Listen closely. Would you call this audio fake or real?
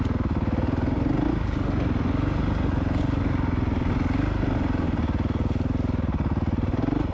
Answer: real